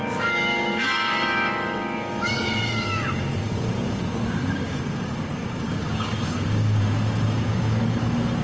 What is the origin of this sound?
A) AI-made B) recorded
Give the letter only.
A